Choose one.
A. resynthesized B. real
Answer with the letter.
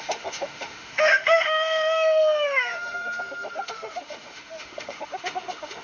A